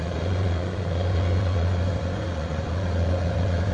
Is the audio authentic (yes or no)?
no